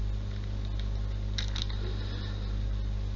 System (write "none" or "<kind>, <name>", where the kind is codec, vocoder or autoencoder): none